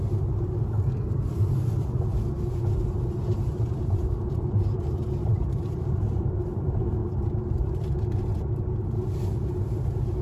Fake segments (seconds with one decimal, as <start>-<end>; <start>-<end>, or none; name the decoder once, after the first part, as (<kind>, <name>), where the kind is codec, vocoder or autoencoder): 0.0-0.5 (vocoder, BigVGAN v2); 3.1-7.0; 7.5-10.2